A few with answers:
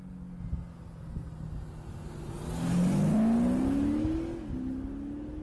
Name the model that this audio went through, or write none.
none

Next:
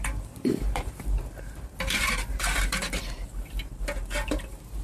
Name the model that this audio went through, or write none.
vocoder, BigVGAN v2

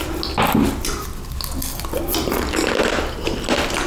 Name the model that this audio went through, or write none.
none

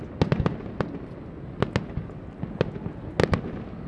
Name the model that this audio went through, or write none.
none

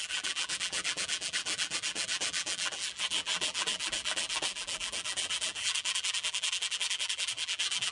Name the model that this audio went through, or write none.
vocoder, BigVGAN v2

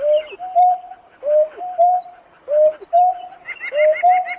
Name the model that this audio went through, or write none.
none